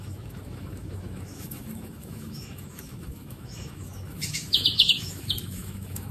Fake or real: fake